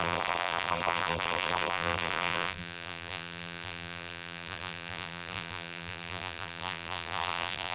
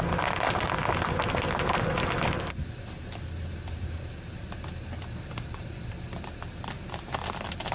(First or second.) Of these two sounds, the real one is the second